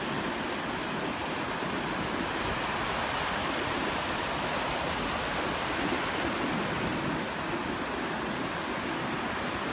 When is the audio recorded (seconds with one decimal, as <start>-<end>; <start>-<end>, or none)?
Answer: 0.0-9.7